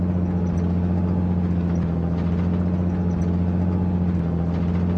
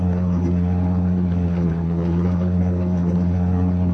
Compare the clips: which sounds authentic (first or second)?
first